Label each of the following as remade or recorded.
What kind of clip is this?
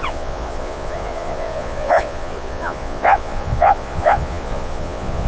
remade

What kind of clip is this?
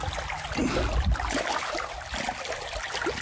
recorded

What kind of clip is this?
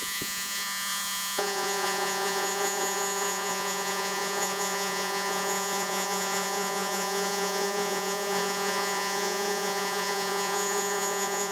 remade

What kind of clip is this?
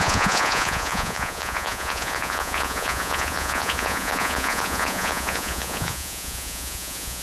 remade